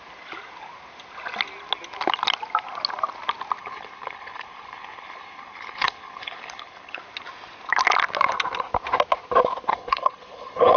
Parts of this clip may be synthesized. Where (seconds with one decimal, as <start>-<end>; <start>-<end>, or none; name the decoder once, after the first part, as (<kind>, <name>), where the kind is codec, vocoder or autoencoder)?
3.6-7.0 (codec, HILCodec); 9.7-10.8